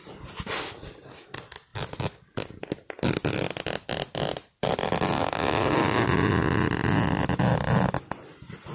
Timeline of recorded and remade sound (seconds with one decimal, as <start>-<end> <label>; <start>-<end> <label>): 0.0-1.7 recorded; 1.7-6.3 remade; 6.3-8.7 recorded